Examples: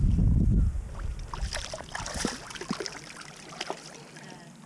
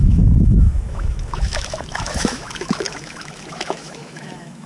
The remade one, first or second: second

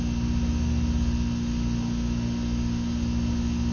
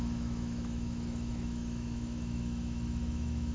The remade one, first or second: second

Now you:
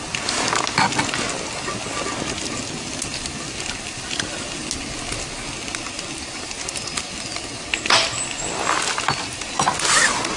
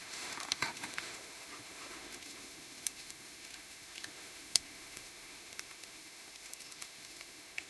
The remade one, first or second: second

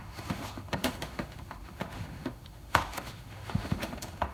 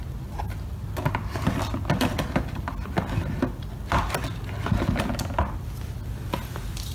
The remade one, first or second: first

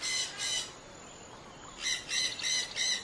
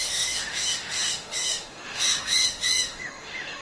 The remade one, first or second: second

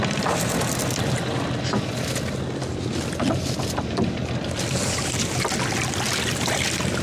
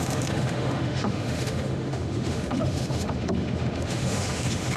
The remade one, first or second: second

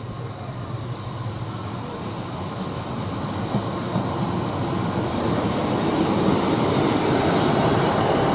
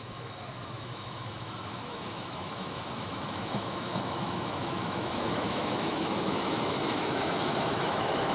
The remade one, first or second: second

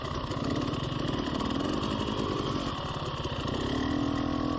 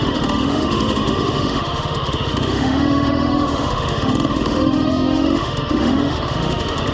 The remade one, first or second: second